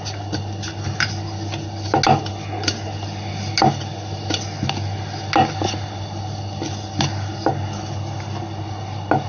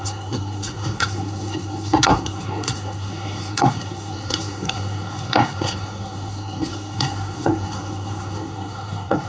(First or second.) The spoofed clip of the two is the second